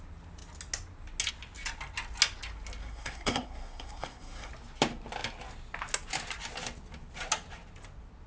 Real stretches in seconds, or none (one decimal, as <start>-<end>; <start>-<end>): 0.0-2.8; 4.5-8.3